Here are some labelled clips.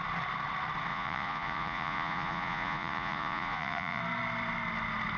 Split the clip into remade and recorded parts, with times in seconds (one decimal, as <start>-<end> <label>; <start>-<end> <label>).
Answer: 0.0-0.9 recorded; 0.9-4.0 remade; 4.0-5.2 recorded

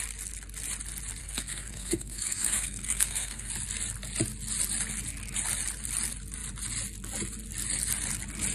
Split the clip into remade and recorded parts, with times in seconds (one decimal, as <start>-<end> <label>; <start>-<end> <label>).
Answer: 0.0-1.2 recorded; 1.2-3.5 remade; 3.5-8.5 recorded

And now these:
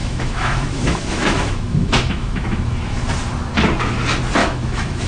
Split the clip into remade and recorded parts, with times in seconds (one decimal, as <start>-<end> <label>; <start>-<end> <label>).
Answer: 0.0-3.1 remade; 3.1-4.4 recorded; 4.4-5.1 remade

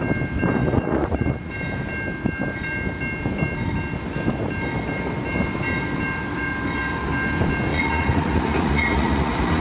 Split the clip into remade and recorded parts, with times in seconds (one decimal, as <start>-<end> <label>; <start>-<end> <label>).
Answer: 0.0-0.6 recorded; 0.6-1.5 remade; 1.5-7.7 recorded; 7.7-9.6 remade

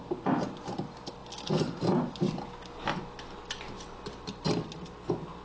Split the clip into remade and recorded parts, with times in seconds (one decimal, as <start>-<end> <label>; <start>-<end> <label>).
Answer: 0.0-5.4 recorded

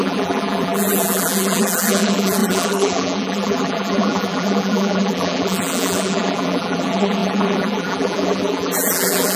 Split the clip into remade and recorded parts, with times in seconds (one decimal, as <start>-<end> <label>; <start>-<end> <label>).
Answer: 0.0-9.4 remade